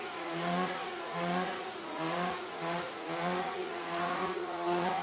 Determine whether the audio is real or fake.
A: fake